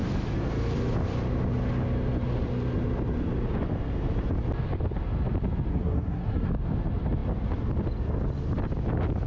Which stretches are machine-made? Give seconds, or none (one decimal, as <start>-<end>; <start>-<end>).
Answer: 5.7-6.5